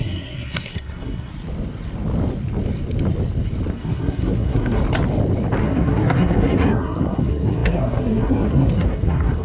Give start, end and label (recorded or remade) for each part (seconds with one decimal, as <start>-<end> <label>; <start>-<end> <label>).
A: 0.0-1.3 remade; 1.3-3.7 recorded; 3.7-4.8 remade; 4.8-5.6 recorded; 5.6-9.4 remade